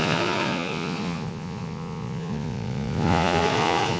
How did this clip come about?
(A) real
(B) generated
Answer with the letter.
B